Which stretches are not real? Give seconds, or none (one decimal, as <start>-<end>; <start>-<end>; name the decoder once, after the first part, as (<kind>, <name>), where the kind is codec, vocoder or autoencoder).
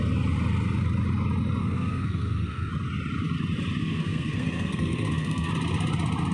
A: 1.6-2.7 (codec, SNAC); 3.8-5.5